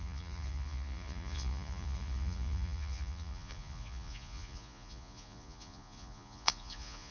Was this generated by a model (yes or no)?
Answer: yes